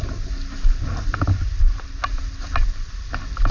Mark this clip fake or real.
real